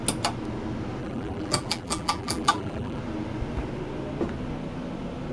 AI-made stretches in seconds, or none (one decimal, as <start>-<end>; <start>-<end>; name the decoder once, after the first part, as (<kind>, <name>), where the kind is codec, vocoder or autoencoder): 1.0-3.0 (vocoder, BigVGAN v2)